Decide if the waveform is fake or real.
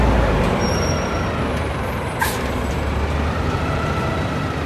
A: fake